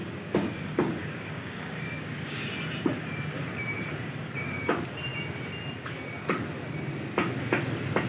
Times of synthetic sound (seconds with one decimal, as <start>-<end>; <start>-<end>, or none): 0.0-2.4